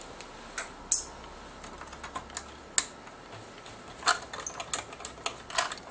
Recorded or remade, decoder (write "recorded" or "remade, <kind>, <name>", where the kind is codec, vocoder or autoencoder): recorded